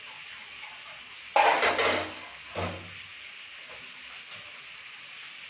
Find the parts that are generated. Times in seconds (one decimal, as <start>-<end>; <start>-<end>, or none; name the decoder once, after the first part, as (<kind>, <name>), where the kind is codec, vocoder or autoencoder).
none